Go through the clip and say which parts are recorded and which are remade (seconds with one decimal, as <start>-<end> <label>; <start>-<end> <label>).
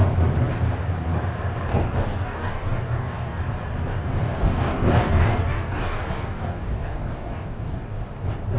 0.0-1.7 recorded; 1.7-3.4 remade; 3.4-3.9 recorded; 3.9-8.0 remade; 8.0-8.6 recorded